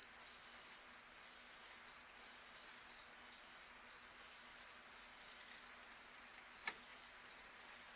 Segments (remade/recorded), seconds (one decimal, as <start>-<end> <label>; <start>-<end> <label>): 0.0-8.0 recorded